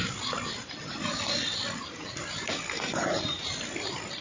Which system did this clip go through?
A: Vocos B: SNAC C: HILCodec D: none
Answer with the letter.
D